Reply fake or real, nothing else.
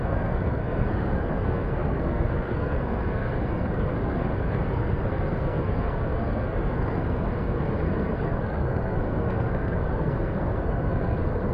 fake